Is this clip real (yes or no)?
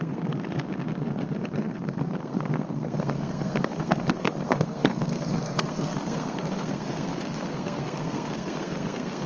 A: no